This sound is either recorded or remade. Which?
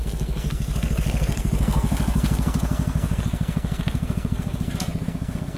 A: remade